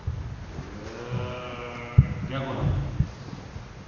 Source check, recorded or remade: recorded